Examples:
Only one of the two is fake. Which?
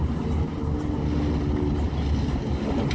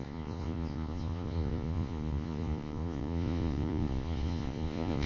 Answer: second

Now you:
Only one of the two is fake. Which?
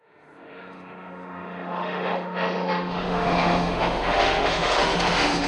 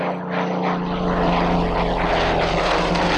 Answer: first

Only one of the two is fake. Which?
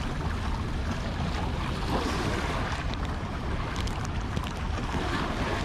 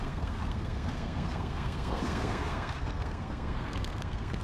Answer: second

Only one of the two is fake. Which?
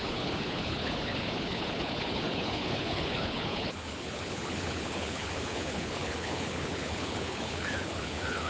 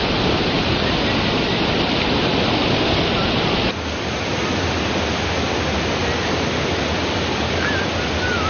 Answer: first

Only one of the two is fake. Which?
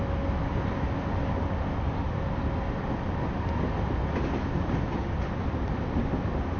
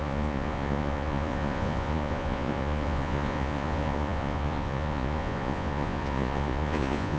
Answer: second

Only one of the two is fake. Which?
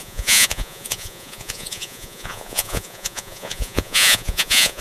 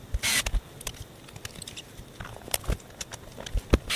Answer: first